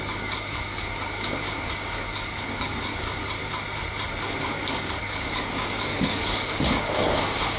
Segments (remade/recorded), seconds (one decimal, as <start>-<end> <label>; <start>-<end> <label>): 0.0-3.4 remade; 3.4-4.4 recorded; 4.4-7.6 remade